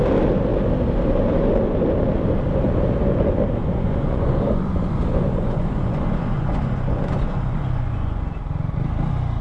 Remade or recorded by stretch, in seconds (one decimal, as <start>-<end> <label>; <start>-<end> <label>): 0.0-3.6 recorded; 3.6-8.2 remade; 8.2-9.4 recorded